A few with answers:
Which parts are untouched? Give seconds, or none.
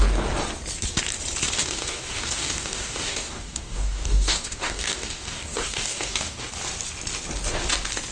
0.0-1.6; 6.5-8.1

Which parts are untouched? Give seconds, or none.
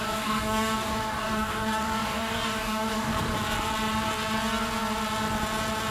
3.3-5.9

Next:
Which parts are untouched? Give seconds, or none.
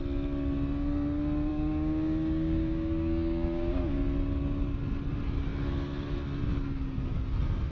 0.0-1.5; 4.0-7.7